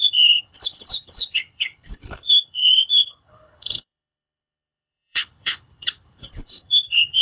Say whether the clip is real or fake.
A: fake